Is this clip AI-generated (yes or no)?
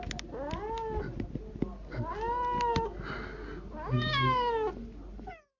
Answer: no